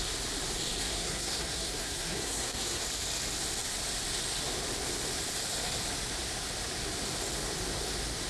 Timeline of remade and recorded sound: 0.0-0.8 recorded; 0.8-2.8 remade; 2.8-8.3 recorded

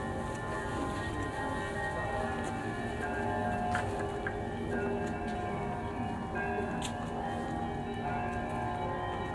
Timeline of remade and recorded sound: 0.0-9.3 recorded

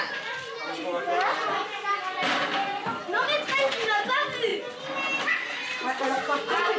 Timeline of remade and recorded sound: 0.0-6.8 recorded

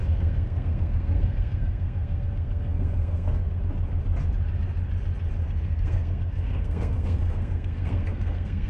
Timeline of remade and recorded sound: 0.0-3.6 remade; 3.6-5.4 recorded; 5.4-8.7 remade

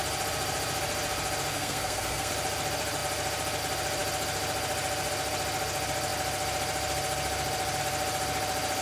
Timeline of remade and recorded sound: 0.0-1.5 recorded; 1.5-2.3 remade; 2.3-8.8 recorded

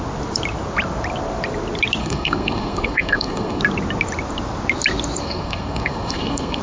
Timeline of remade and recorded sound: 0.0-2.0 recorded; 2.0-3.6 remade; 3.6-5.2 recorded; 5.2-6.6 remade

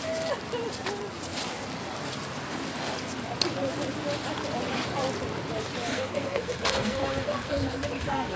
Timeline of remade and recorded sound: 0.0-5.9 recorded; 5.9-8.4 remade